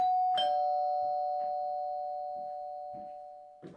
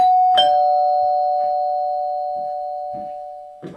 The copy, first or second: second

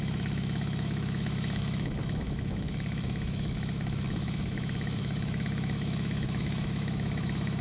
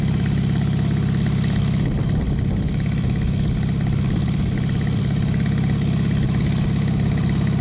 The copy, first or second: first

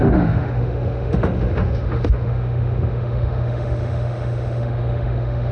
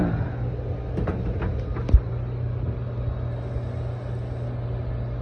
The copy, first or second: first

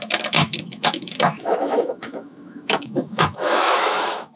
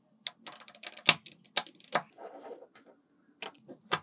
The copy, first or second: first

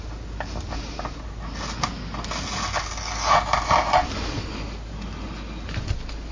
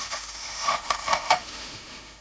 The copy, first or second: second